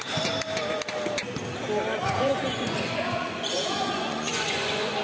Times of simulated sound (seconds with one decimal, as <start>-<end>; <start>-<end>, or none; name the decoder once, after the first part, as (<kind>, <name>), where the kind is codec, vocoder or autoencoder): 2.0-5.0 (vocoder, Vocos)